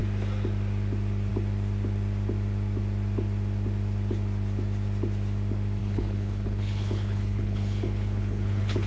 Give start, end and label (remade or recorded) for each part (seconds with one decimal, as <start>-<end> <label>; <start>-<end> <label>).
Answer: 0.0-5.8 recorded; 5.8-8.9 remade